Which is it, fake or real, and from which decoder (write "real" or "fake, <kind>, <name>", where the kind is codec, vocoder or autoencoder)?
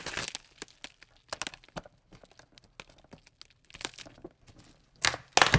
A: real